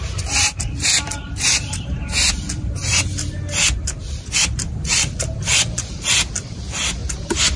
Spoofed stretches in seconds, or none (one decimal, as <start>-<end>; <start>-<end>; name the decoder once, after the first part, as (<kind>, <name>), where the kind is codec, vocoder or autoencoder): 0.0-7.6 (vocoder, BigVGAN v2)

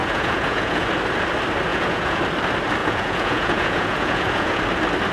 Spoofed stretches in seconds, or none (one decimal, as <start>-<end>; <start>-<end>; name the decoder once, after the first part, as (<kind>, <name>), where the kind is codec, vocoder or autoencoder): 0.0-0.9 (vocoder, Vocos); 1.7-2.2; 2.8-4.6

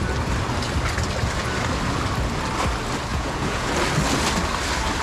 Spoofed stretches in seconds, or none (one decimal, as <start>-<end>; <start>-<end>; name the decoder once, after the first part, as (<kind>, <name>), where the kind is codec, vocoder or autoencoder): 3.1-3.7 (vocoder, Vocos)

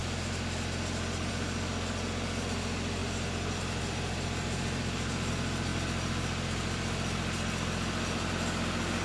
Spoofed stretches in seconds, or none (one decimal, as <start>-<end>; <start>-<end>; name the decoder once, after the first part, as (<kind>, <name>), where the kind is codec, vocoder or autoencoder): 3.0-5.3 (vocoder, BigVGAN v2); 5.7-8.3